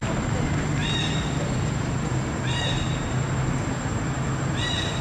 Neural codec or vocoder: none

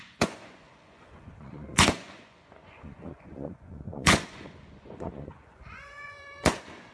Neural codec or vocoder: vocoder, Vocos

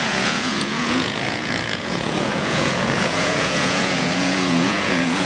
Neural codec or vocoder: vocoder, Vocos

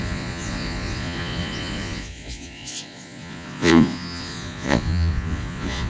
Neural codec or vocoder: vocoder, Vocos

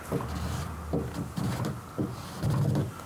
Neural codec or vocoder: none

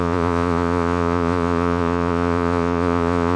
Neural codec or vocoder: vocoder, Vocos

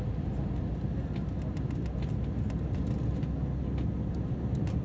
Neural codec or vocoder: none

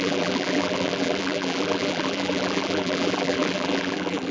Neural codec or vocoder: vocoder, BigVGAN v2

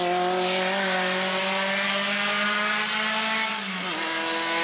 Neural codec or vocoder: none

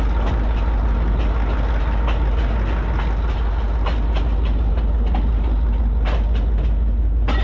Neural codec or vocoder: none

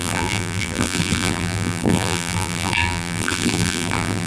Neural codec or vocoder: vocoder, BigVGAN v2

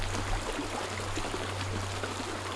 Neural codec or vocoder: none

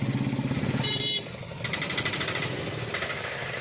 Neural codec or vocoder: none